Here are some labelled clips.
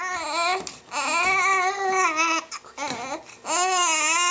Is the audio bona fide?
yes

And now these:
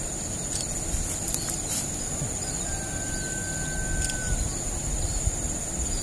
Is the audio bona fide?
yes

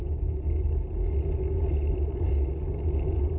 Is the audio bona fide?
yes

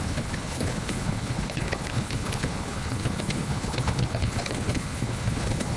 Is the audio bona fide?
no